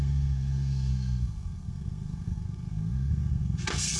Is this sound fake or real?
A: fake